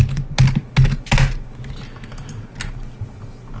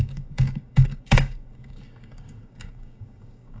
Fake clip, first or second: second